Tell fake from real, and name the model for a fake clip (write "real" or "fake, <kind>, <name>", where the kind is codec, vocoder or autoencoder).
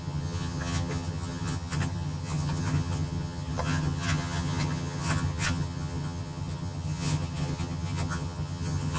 fake, vocoder, HiFi-GAN